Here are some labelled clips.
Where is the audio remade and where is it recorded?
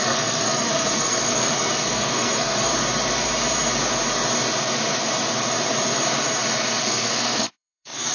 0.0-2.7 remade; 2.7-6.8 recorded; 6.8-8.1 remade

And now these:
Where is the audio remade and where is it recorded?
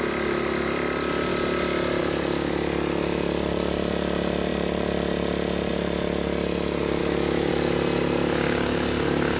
0.0-7.0 recorded; 7.0-7.5 remade; 7.5-9.4 recorded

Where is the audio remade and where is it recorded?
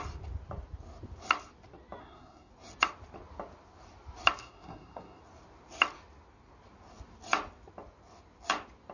0.0-2.0 recorded; 2.0-2.5 remade; 2.5-4.4 recorded; 4.4-5.2 remade; 5.2-8.9 recorded